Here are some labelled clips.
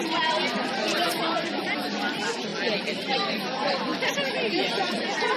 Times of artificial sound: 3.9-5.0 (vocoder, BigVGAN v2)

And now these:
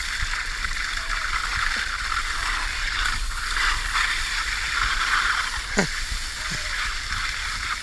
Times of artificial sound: none

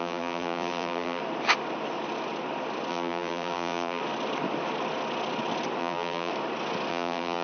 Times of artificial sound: 0.0-1.2 (vocoder, BigVGAN v2); 2.9-4.0; 5.8-6.3; 6.9-7.4

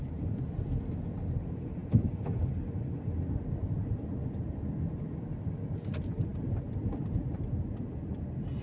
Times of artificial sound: none